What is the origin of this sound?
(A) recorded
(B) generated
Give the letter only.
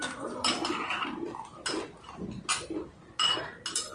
A